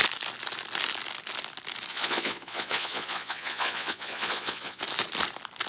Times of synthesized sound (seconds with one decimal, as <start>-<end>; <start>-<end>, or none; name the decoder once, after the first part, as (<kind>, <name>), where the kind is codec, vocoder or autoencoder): 1.9-4.8 (vocoder, Vocos)